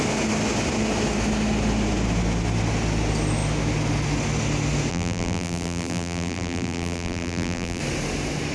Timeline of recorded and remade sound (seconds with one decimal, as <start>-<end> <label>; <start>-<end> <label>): 0.0-4.9 recorded; 4.9-7.8 remade; 7.8-8.5 recorded